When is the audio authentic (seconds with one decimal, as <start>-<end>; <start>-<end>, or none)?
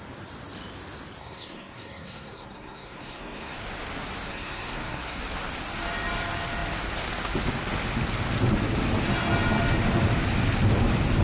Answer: 0.0-1.2; 3.6-4.3; 5.2-11.2